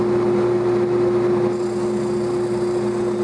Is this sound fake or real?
real